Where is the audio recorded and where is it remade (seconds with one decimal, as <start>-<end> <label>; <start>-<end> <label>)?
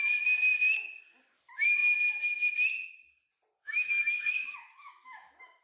0.0-3.6 recorded; 3.6-5.6 remade